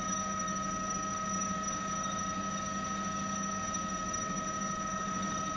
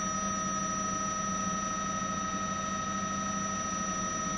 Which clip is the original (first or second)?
second